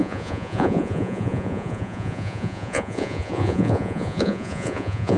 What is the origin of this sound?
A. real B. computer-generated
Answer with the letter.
B